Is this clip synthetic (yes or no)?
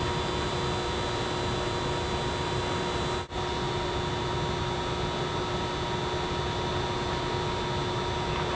no